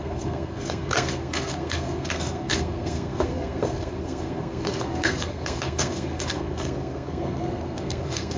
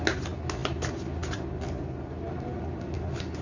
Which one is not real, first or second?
first